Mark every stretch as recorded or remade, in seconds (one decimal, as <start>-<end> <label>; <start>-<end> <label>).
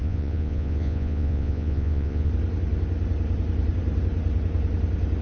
0.0-2.3 remade; 2.3-5.2 recorded